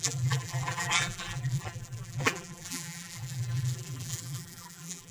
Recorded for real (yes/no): no